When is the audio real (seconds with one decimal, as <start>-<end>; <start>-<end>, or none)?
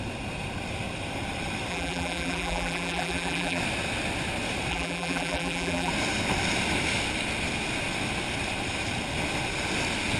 0.0-1.7; 3.6-4.7; 5.9-10.2